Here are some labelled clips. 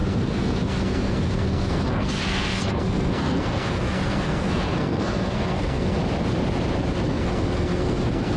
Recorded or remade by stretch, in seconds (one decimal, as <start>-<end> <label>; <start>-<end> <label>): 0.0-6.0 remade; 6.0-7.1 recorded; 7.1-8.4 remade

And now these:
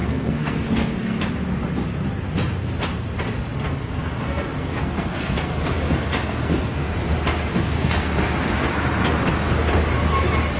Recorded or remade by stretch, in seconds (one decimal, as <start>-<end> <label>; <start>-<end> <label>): 0.0-1.3 remade; 1.3-4.1 recorded; 4.1-6.9 remade; 6.9-7.5 recorded; 7.5-8.2 remade; 8.2-10.6 recorded

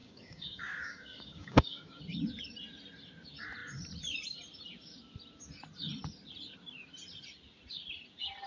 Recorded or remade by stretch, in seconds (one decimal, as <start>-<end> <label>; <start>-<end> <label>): 0.0-2.0 remade; 2.0-8.5 recorded

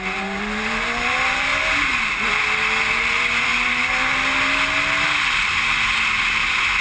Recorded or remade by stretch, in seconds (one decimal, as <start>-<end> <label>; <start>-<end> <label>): 0.0-1.5 remade; 1.5-2.9 recorded; 2.9-3.5 remade; 3.5-6.8 recorded

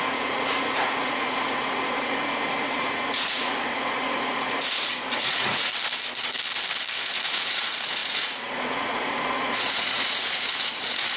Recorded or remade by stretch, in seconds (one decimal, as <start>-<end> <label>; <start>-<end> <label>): 0.0-5.7 remade; 5.7-7.0 recorded; 7.0-11.2 remade

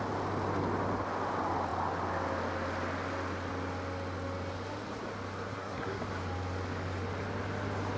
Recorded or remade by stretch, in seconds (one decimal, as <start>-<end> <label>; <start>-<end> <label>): 0.0-5.5 recorded; 5.5-6.0 remade; 6.0-8.0 recorded